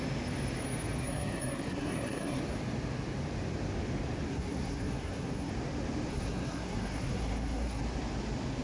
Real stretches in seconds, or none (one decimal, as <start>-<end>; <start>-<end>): 0.0-1.0; 2.4-4.3; 5.5-6.1; 7.8-8.6